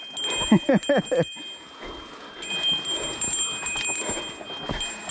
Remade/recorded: recorded